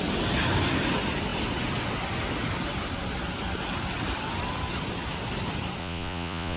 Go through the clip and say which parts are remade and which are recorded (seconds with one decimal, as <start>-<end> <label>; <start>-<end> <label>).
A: 0.0-5.8 recorded; 5.8-6.6 remade